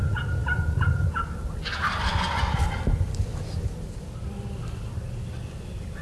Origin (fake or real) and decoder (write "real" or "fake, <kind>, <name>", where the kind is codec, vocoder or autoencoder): real